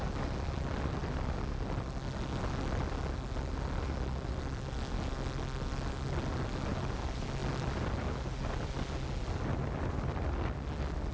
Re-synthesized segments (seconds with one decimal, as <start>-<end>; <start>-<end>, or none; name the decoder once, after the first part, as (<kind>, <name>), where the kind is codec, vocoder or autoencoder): none